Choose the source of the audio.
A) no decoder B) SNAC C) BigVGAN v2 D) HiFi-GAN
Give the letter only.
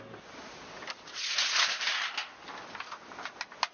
A